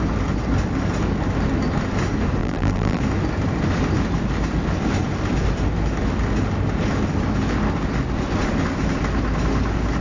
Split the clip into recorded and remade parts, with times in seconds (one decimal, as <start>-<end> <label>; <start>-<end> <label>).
0.0-2.4 recorded; 2.4-3.0 remade; 3.0-10.0 recorded